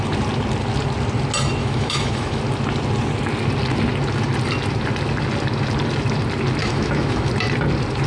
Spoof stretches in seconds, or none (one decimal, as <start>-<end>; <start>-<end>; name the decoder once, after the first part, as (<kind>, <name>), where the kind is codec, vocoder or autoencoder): 1.6-2.4 (autoencoder, DAC-VAE); 6.6-7.3